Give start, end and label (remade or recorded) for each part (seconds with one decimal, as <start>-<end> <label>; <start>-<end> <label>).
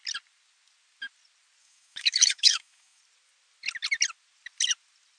0.0-1.6 recorded; 1.6-3.0 remade; 3.0-5.2 recorded